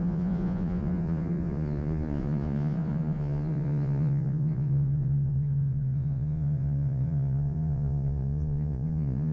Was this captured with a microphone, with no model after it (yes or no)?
no